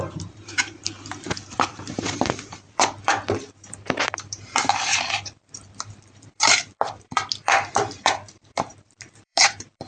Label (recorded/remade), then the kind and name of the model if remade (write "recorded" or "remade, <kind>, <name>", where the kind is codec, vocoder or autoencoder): remade, vocoder, BigVGAN v2